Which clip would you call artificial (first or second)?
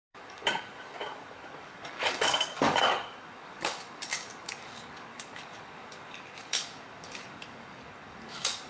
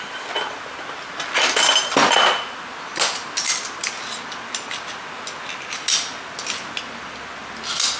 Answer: first